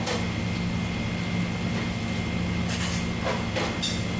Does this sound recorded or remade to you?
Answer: recorded